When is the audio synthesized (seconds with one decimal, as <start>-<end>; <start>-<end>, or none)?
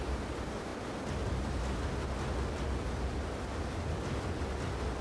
none